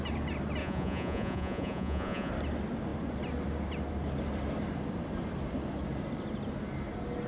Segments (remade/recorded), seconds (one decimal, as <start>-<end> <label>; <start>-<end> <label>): 0.0-0.6 recorded; 0.6-2.3 remade; 2.3-7.3 recorded